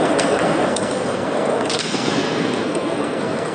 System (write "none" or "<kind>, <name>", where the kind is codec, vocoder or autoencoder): codec, SNAC